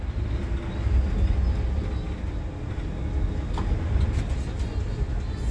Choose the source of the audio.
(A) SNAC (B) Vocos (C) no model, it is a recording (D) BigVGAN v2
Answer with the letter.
C